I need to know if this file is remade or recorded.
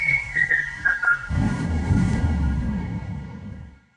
remade